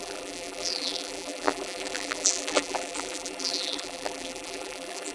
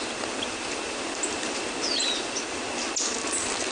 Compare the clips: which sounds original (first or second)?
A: second